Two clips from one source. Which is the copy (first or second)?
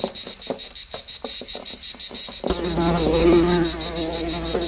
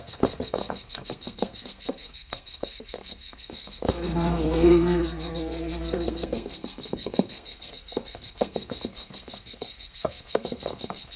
second